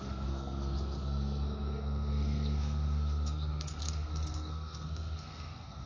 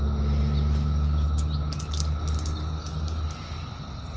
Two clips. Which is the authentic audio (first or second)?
second